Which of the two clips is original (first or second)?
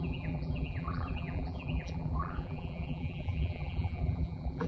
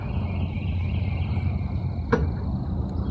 second